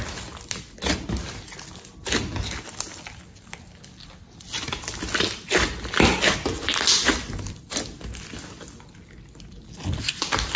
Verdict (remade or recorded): recorded